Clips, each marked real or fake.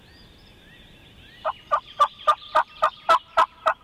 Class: real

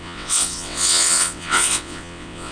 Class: fake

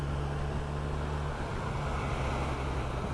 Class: real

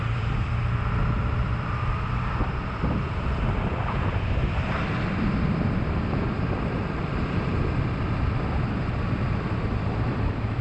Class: fake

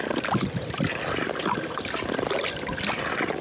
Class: real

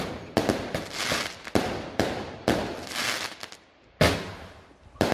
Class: real